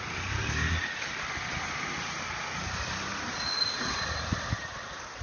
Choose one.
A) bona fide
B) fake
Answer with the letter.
A